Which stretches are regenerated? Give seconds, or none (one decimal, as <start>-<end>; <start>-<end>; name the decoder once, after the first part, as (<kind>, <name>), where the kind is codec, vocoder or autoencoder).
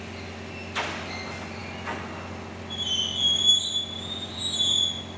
none